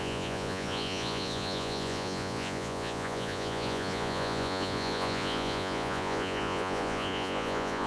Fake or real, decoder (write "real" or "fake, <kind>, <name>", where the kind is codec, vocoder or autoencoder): fake, vocoder, Vocos